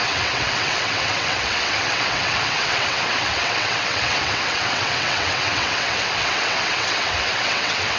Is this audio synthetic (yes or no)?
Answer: yes